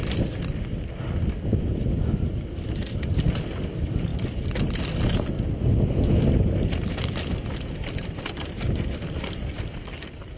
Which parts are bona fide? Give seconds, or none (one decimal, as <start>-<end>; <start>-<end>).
0.0-10.4